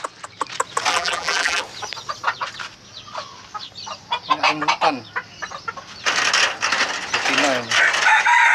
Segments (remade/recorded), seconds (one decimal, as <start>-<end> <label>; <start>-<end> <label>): 0.0-0.9 recorded; 0.9-1.6 remade; 1.6-8.5 recorded